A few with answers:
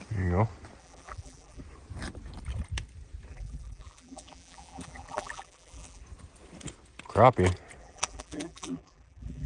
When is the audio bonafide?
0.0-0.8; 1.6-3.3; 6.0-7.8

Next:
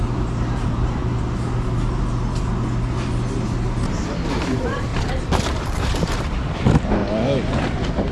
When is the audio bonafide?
1.0-4.4; 4.9-5.5; 7.0-8.1

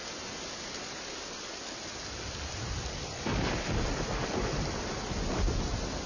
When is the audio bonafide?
0.0-0.8; 3.3-6.1